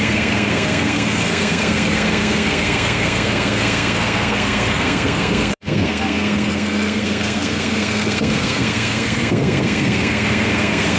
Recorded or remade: remade